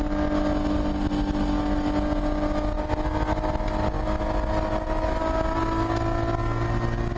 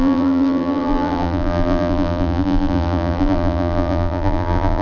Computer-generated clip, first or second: second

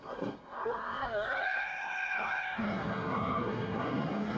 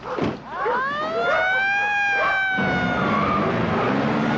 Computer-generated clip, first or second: first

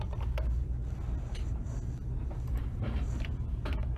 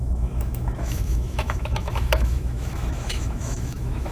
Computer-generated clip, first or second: second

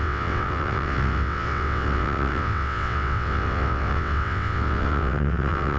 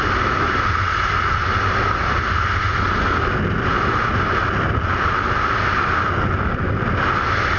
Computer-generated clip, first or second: first